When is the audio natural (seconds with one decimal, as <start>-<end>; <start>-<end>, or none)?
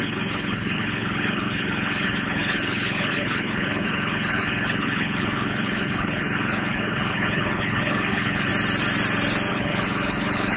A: 8.5-9.5